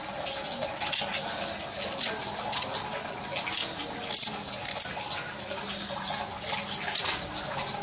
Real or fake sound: real